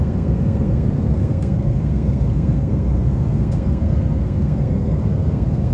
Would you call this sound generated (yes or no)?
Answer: yes